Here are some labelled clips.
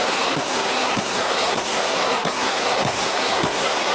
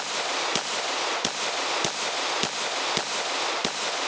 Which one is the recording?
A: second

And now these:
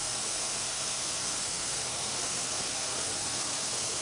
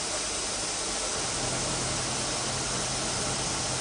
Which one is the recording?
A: second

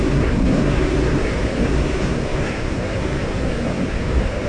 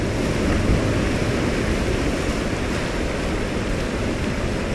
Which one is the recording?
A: second